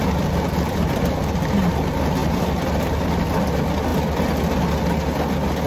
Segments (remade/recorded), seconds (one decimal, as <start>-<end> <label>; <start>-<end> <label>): 0.0-5.7 recorded